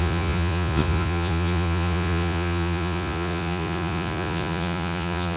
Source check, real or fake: fake